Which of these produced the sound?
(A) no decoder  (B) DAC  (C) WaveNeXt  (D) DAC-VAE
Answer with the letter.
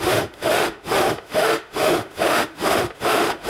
D